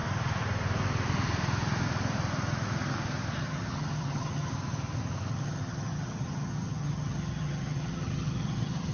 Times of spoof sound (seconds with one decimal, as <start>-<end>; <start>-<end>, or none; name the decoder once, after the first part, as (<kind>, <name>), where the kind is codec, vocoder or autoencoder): 3.4-4.5 (vocoder, HiFi-GAN); 5.3-8.9